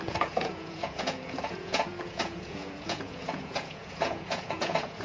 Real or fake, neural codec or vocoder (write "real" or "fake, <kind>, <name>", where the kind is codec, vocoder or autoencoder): fake, vocoder, Vocos